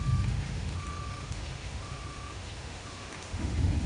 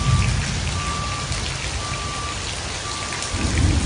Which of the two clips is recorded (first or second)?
second